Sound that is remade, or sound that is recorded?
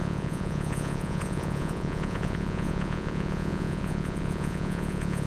remade